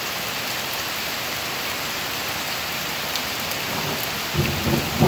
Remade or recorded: recorded